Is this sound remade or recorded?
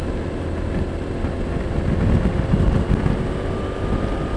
recorded